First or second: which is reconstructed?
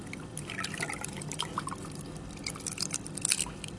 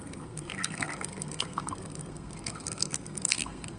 second